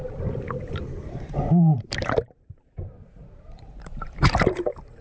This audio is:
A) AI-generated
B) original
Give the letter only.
A